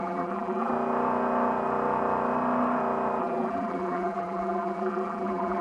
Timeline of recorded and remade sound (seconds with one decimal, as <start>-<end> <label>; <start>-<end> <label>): 0.0-0.7 remade; 0.7-3.2 recorded; 3.2-5.6 remade